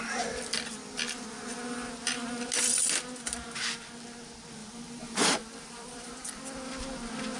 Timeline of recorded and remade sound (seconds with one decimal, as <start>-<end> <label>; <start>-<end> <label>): 0.0-4.6 recorded; 4.6-6.4 remade; 6.4-7.4 recorded